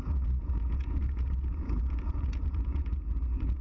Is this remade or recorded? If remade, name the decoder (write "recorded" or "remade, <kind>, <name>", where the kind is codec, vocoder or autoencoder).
remade, vocoder, Vocos